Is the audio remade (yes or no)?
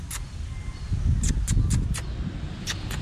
no